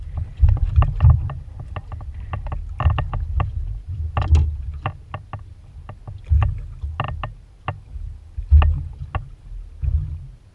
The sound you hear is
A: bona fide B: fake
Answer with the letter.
A